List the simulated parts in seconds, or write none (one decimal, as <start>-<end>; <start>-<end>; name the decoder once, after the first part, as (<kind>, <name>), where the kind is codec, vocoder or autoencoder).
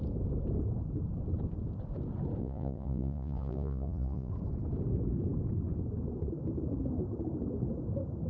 2.4-4.3 (vocoder, Vocos)